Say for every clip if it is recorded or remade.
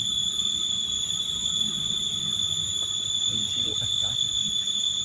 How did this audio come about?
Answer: recorded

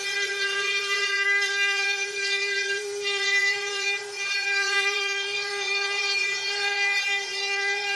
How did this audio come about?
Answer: remade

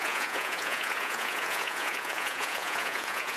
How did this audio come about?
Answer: remade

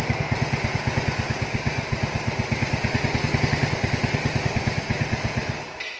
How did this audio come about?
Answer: recorded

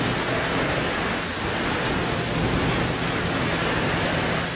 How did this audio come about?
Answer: recorded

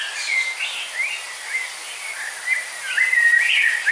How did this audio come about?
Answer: recorded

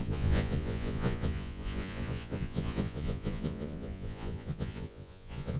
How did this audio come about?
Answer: remade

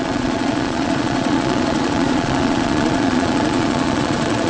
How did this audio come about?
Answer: remade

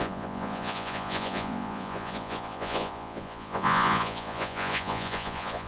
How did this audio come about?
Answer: remade